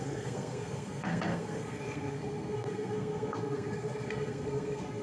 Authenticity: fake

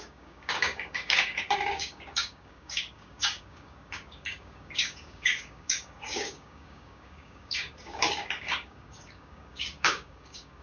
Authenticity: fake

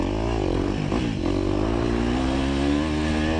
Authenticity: real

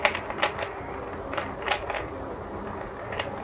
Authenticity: real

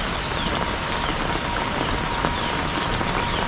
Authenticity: real